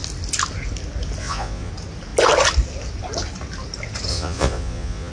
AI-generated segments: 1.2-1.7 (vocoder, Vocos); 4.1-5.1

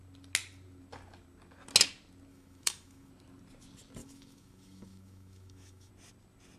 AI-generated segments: 2.3-3.1 (autoencoder, DAC-VAE); 4.0-5.9